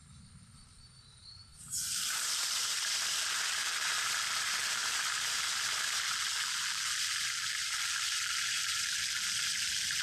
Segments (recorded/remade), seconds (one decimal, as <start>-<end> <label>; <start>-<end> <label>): 0.0-4.8 remade; 4.8-5.3 recorded; 5.3-10.0 remade